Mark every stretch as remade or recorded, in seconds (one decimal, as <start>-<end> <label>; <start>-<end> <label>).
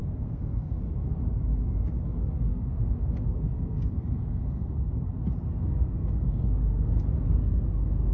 0.0-0.8 remade; 0.8-2.5 recorded; 2.5-4.9 remade; 4.9-5.6 recorded; 5.6-7.0 remade; 7.0-7.4 recorded; 7.4-8.1 remade